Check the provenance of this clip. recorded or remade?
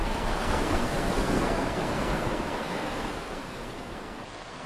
remade